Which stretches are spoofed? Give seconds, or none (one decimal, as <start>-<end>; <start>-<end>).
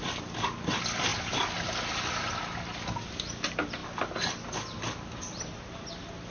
none